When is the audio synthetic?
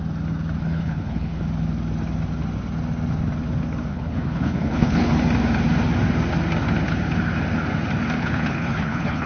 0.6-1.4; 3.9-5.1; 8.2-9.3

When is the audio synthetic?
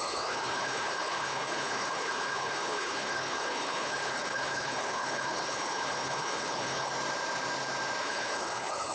0.0-6.9; 8.0-8.9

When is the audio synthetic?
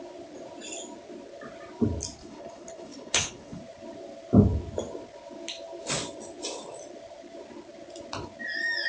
2.2-3.6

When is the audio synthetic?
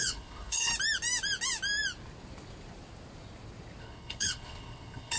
0.0-0.7; 3.8-5.2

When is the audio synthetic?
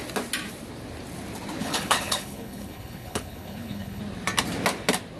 1.6-4.0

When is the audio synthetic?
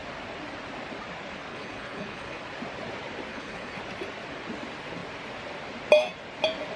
1.5-2.4; 3.3-3.8